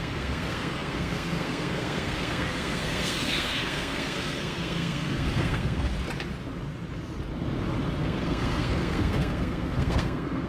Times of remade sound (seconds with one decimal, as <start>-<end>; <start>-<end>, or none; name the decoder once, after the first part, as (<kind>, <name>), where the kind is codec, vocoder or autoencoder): 0.0-5.9 (codec, SNAC); 8.0-10.5